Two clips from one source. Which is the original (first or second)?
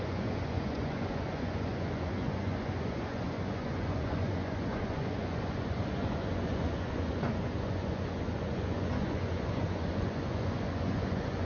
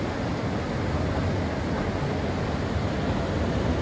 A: second